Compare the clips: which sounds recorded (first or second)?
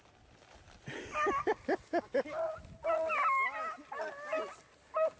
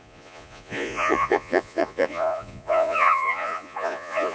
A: first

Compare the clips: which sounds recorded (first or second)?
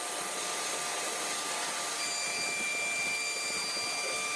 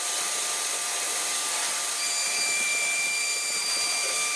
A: first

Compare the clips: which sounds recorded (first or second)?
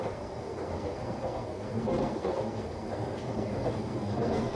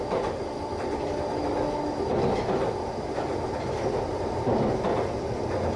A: second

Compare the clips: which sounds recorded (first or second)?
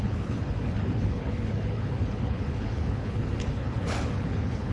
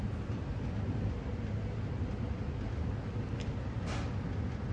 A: second